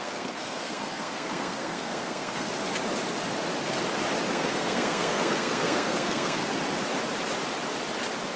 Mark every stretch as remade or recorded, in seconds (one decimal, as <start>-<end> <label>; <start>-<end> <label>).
0.0-2.5 remade; 2.5-4.3 recorded; 4.3-6.4 remade; 6.4-8.4 recorded